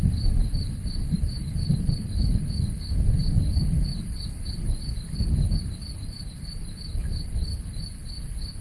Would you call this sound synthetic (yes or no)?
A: no